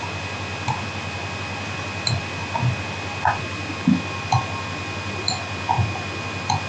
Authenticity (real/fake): real